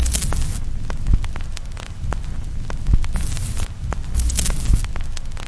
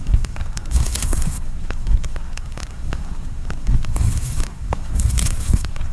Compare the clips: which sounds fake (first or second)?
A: second